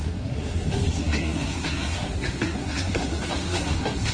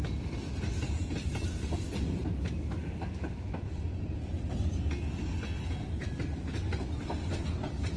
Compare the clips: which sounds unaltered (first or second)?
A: second